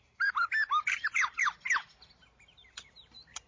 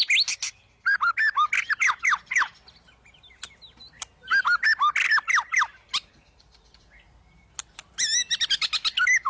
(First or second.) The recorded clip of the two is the second